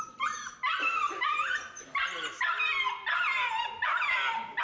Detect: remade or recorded recorded